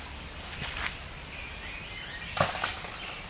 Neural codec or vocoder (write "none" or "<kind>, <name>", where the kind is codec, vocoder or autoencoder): none